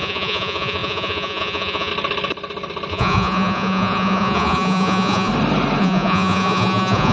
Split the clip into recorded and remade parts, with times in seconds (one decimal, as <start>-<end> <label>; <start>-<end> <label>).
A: 0.0-1.9 remade; 1.9-2.9 recorded; 2.9-5.3 remade; 5.3-5.8 recorded; 5.8-7.1 remade